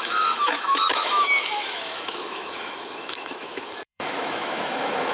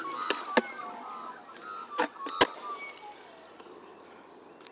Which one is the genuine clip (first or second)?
second